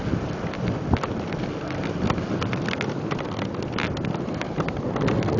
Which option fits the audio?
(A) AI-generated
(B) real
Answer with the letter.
A